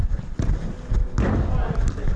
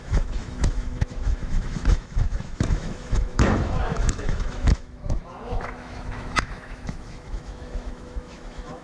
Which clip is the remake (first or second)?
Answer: second